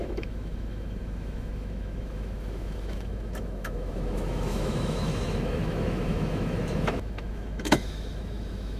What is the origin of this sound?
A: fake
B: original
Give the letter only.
A